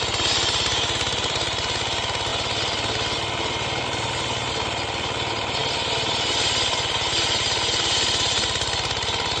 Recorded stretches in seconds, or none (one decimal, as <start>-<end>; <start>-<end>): 2.3-4.5